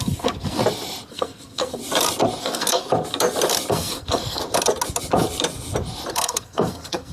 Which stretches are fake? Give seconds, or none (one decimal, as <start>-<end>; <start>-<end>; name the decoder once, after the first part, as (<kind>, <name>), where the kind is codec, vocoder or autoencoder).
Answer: 0.0-0.6 (codec, SNAC); 1.1-1.8; 2.4-2.9; 3.7-4.4; 6.1-7.1